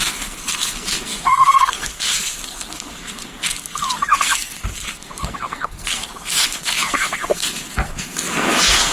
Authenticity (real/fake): fake